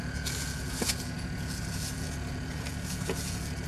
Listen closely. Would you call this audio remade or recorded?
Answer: remade